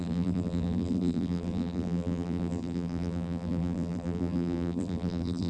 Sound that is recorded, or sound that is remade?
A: remade